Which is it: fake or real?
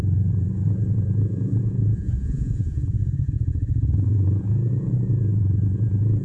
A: fake